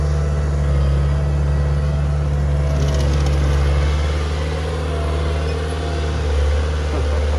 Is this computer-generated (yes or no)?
no